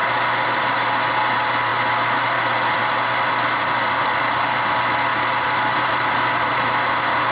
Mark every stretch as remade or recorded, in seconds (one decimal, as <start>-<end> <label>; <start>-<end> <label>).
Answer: 0.0-1.7 recorded; 1.7-2.8 remade; 2.8-5.1 recorded; 5.1-6.1 remade; 6.1-7.3 recorded